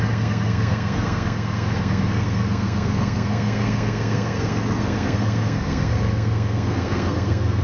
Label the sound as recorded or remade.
remade